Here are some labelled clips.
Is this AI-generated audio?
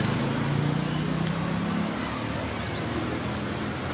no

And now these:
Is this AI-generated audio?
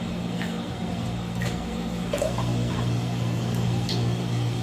yes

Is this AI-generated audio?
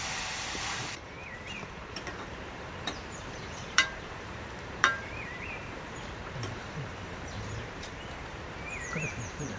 yes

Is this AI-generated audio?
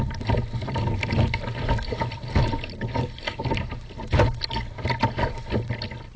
no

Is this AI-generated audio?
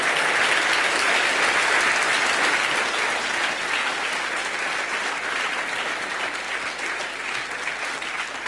no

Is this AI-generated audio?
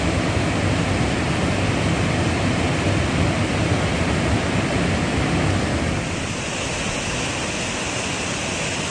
no